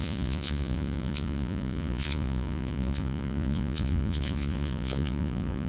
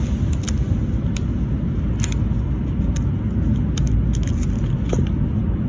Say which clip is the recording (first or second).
second